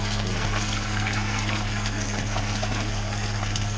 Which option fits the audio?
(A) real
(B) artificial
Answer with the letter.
B